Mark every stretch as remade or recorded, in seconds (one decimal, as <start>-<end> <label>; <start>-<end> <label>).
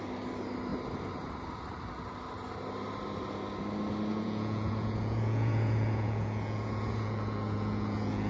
0.0-4.1 recorded; 4.1-8.3 remade